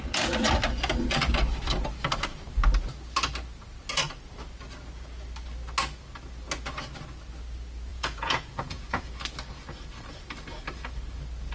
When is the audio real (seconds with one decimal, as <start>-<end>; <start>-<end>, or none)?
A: 0.0-7.9; 9.1-11.5